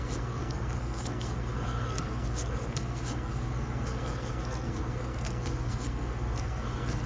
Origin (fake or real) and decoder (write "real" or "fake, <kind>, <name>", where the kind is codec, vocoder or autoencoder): fake, codec, SNAC